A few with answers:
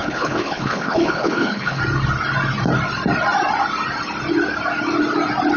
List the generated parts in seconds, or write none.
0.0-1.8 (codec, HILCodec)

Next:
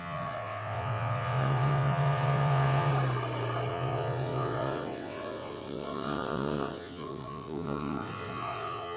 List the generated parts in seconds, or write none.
0.0-2.9 (vocoder, WaveNeXt); 3.7-9.0

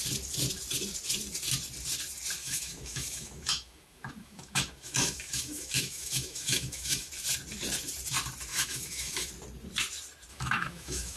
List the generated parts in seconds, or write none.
2.4-7.1 (autoencoder, DAC-VAE); 8.5-9.3; 10.3-11.2

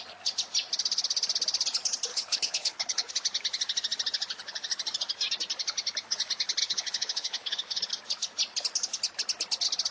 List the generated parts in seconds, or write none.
2.1-3.1 (codec, HILCodec); 6.6-7.9

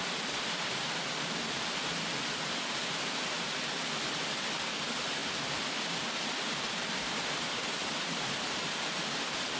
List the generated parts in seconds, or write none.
none

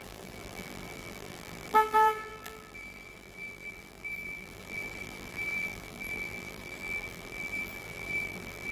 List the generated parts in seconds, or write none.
0.0-8.7 (vocoder, BigVGAN v2)

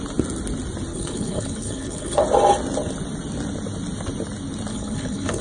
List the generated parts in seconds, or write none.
0.9-2.2 (codec, HILCodec); 4.7-5.4

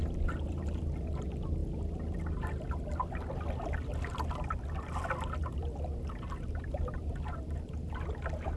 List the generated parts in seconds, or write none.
none